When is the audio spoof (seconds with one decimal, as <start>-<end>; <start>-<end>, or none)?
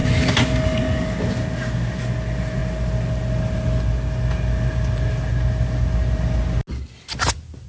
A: none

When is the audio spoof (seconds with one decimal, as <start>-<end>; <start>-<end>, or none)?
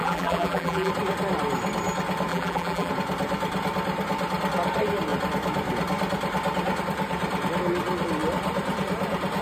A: 0.0-0.9; 2.3-2.9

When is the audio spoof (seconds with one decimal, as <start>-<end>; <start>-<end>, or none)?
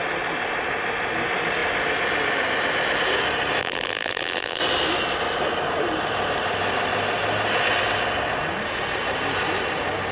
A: 3.6-4.6